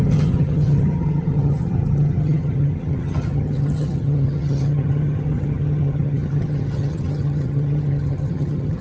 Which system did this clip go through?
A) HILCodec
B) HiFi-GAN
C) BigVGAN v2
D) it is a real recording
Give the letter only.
B